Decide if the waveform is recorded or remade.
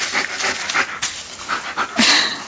recorded